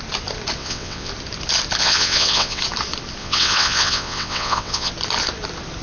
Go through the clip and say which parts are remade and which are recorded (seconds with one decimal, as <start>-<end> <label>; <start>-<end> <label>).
0.0-0.6 recorded; 0.6-1.1 remade; 1.1-1.8 recorded; 1.8-2.6 remade; 2.6-3.2 recorded; 3.2-4.9 remade; 4.9-5.8 recorded

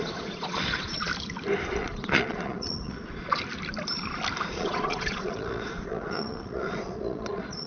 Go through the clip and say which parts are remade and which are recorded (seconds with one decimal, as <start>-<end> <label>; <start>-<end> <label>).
0.0-1.1 remade; 1.1-1.7 recorded; 1.7-3.4 remade; 3.4-4.5 recorded; 4.5-7.7 remade